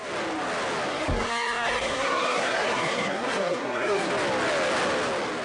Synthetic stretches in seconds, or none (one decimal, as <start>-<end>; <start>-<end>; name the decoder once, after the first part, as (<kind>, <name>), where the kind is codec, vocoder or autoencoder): 0.9-4.1 (codec, SNAC)